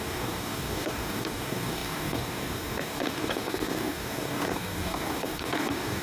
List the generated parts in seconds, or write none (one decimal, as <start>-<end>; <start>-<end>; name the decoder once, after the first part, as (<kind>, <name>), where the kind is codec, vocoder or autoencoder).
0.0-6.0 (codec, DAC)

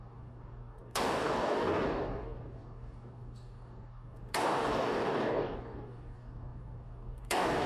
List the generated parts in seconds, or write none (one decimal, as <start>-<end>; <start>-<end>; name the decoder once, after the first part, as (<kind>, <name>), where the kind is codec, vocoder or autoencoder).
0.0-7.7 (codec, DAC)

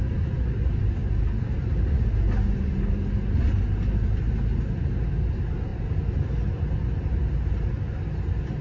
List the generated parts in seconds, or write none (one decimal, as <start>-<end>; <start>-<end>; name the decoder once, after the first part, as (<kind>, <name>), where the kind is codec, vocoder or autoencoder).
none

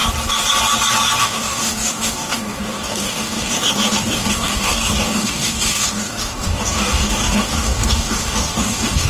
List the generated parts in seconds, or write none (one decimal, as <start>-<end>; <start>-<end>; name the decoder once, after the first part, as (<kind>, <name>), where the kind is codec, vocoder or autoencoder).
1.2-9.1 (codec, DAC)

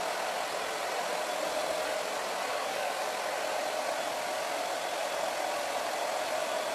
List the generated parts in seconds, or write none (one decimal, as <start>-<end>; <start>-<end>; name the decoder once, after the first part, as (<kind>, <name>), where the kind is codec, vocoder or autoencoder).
2.5-3.1 (codec, DAC)

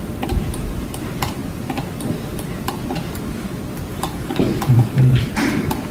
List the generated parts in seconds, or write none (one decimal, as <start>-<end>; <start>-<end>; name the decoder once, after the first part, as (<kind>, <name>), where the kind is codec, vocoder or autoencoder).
3.9-5.3 (codec, DAC)

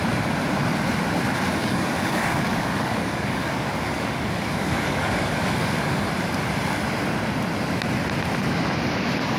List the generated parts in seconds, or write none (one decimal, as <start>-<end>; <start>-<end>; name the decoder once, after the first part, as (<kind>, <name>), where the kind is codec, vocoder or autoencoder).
1.6-6.1 (codec, DAC)